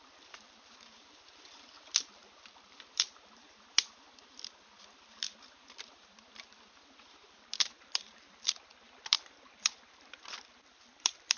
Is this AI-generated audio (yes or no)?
yes